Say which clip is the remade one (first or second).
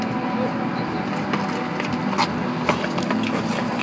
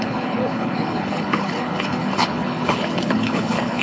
second